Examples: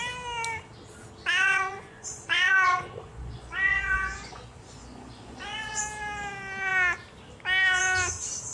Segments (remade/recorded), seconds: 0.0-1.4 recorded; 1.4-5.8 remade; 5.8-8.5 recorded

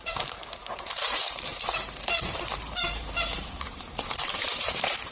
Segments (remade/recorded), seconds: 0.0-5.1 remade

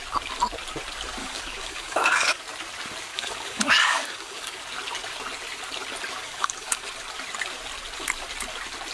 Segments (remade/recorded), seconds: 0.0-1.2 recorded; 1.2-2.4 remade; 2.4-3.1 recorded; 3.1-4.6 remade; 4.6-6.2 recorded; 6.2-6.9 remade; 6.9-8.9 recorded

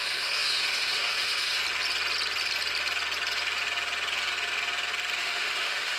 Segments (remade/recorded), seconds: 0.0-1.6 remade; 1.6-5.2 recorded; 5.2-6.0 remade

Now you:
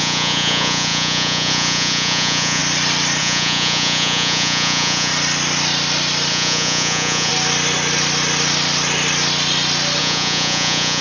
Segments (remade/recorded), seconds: 0.0-2.6 remade; 2.6-3.2 recorded; 3.2-5.1 remade; 5.1-6.3 recorded; 6.3-7.3 remade; 7.3-10.0 recorded; 10.0-11.0 remade